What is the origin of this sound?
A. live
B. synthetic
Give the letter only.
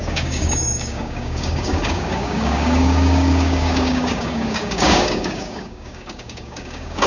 B